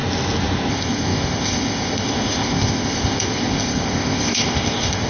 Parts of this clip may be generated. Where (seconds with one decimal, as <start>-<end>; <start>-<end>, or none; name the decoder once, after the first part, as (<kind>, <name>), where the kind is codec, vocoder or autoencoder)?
0.7-5.1 (codec, ZipCodec)